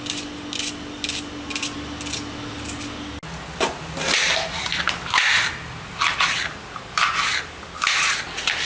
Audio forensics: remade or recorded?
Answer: recorded